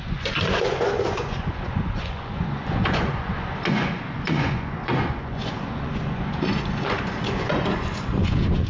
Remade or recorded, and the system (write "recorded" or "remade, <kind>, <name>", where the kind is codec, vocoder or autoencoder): remade, vocoder, Vocos